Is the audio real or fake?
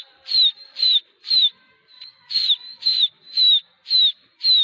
real